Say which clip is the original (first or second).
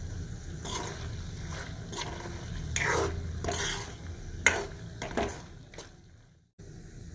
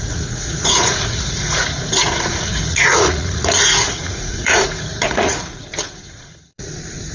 first